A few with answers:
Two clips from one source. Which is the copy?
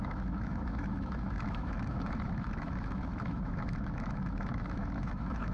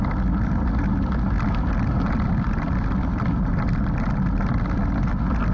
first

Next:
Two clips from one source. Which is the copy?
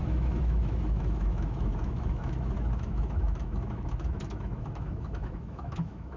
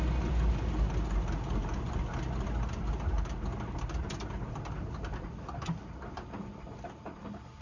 first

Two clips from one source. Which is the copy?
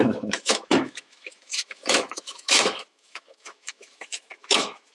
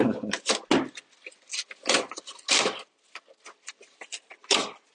first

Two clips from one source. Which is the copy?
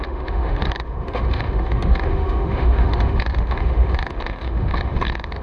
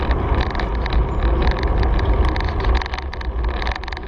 first